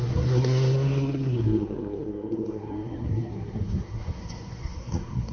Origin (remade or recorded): remade